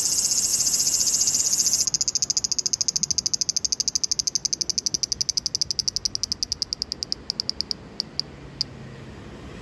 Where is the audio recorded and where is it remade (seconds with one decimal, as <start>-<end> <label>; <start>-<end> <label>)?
0.0-0.5 recorded; 0.5-1.4 remade; 1.4-9.6 recorded